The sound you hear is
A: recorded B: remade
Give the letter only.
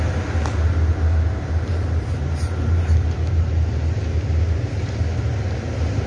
A